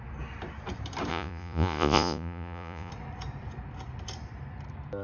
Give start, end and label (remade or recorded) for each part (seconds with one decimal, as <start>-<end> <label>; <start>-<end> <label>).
0.0-1.1 recorded; 1.1-2.9 remade; 2.9-5.0 recorded

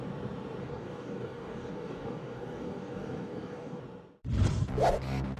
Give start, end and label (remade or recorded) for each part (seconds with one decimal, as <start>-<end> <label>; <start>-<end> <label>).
0.0-0.6 recorded; 0.6-3.8 remade; 3.8-5.4 recorded

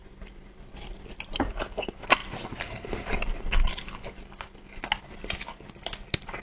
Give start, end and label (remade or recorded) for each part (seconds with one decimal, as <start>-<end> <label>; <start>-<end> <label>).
0.0-6.4 recorded

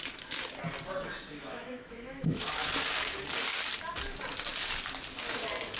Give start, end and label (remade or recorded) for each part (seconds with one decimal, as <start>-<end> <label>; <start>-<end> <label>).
0.0-1.4 recorded; 1.4-2.7 remade; 2.7-5.8 recorded